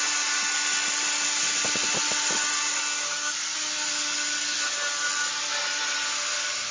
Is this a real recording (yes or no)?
yes